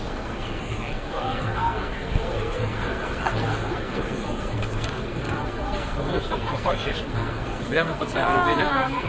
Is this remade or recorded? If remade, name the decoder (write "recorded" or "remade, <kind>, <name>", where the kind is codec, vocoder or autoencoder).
remade, codec, SNAC